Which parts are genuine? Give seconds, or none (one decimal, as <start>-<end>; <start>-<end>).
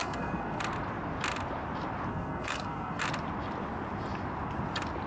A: 0.6-2.1; 3.0-5.1